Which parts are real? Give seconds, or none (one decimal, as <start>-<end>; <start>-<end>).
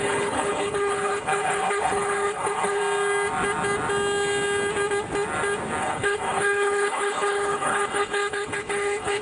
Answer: 2.8-5.8